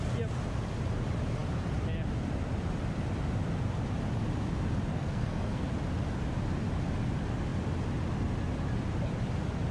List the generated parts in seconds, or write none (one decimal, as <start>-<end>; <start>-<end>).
4.9-5.7